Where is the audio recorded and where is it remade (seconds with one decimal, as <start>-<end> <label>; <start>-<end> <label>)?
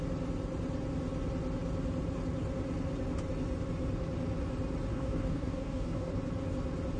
0.0-4.9 recorded; 4.9-6.1 remade; 6.1-7.0 recorded